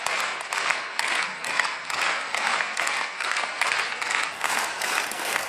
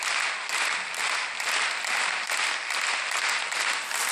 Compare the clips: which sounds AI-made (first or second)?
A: first